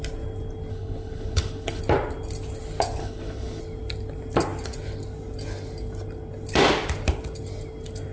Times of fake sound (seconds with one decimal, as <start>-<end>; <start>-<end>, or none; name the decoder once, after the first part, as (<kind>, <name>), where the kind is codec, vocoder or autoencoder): 0.7-1.8 (codec, HILCodec); 3.0-3.6